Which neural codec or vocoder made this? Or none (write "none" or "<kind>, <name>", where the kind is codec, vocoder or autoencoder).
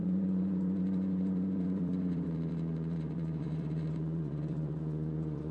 vocoder, Vocos